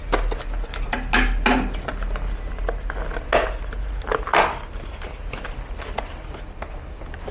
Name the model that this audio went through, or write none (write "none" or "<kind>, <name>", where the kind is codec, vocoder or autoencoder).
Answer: none